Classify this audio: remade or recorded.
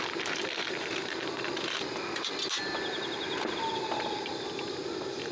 recorded